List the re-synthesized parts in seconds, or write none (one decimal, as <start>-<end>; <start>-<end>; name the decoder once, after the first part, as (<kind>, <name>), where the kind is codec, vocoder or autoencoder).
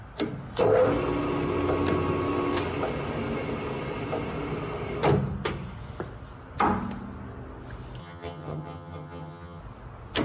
8.0-9.6 (vocoder, HiFi-GAN)